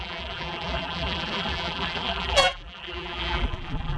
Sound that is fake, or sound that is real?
fake